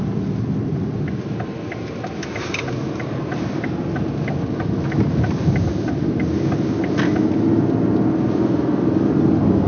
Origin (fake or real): real